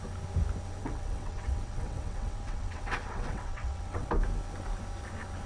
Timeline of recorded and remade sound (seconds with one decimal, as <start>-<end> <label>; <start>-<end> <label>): 0.0-0.8 recorded; 0.8-4.1 remade; 4.1-5.5 recorded

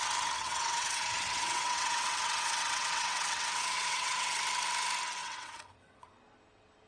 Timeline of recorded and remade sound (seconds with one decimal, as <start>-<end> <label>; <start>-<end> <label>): 0.0-0.4 recorded; 0.4-4.4 remade; 4.4-5.2 recorded; 5.2-6.1 remade; 6.1-6.9 recorded

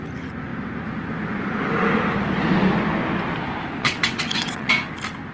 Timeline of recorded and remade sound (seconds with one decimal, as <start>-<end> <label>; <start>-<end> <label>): 0.0-3.8 recorded; 3.8-4.7 remade; 4.7-5.3 recorded